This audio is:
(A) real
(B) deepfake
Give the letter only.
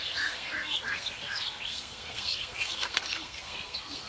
B